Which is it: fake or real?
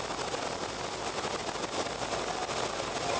real